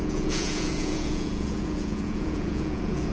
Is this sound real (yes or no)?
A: no